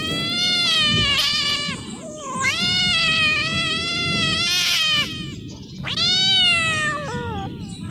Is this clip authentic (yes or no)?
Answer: yes